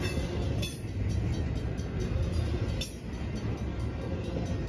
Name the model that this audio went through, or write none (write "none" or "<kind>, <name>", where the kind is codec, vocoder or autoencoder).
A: none